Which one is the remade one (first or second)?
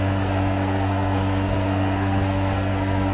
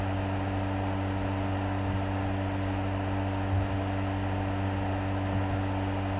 first